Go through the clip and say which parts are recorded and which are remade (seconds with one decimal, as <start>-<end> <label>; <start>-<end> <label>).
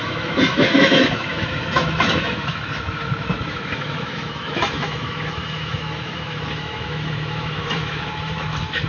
0.0-8.9 remade